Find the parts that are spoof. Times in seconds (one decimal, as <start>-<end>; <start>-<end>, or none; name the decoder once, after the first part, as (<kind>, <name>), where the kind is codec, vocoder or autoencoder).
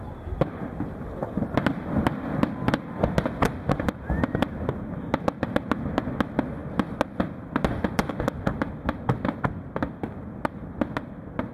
none